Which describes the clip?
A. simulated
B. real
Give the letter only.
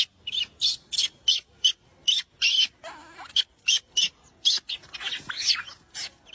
B